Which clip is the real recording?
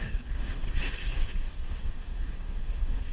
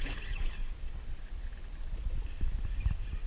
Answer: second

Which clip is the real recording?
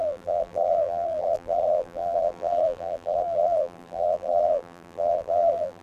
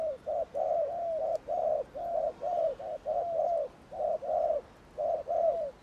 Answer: second